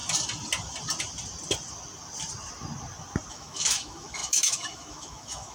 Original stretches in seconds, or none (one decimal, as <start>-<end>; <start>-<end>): 0.0-3.3